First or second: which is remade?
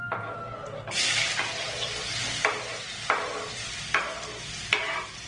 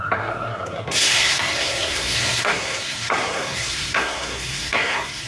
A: second